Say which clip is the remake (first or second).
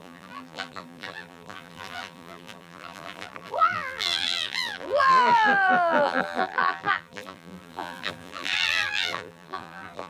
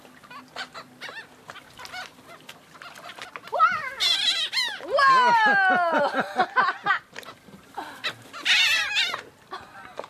first